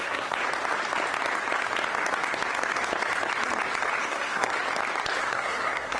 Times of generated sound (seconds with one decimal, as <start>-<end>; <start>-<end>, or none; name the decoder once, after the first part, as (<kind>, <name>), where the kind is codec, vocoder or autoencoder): 0.0-0.4 (codec, SNAC); 4.0-4.5; 5.2-6.0